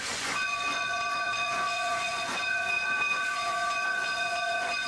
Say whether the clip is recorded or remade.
remade